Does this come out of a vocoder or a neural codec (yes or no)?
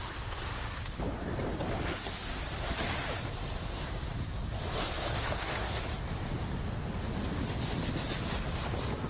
no